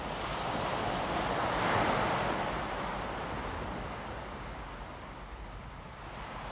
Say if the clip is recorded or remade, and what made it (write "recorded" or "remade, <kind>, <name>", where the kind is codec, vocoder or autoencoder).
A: recorded